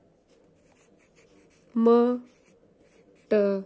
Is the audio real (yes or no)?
yes